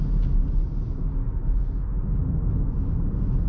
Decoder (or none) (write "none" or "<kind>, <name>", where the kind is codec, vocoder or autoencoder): none